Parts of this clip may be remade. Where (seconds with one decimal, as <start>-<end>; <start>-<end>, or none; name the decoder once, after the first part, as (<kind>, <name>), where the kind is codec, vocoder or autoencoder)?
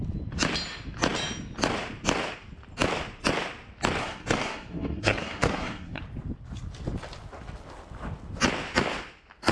4.0-6.0 (codec, SNAC)